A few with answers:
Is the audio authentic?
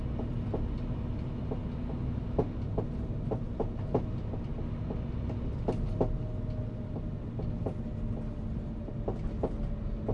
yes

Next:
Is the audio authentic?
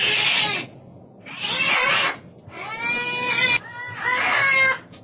yes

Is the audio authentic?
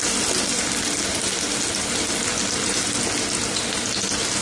yes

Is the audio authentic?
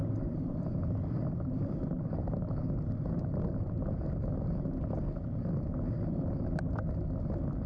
yes